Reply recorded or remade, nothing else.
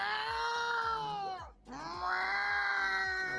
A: recorded